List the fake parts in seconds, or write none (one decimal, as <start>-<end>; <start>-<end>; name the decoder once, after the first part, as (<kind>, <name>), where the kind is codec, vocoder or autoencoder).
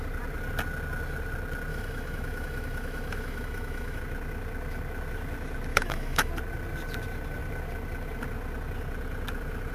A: 1.7-4.0 (autoencoder, DAC-VAE); 5.7-6.3